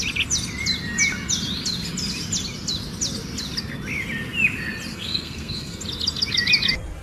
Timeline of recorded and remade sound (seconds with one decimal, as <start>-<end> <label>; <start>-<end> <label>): 0.0-4.9 recorded; 4.9-5.8 remade; 5.8-7.0 recorded